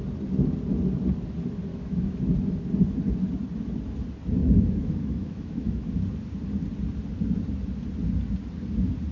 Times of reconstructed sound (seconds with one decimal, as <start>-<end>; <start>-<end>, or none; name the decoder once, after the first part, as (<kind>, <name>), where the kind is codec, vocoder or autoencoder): 1.7-2.2 (autoencoder, DAC-VAE); 4.4-5.9